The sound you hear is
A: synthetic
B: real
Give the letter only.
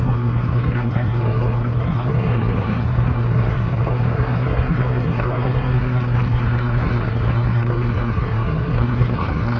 A